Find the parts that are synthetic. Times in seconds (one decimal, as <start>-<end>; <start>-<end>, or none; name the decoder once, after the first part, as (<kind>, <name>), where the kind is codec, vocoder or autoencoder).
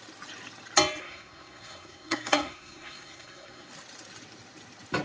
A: 1.0-3.7 (codec, SNAC)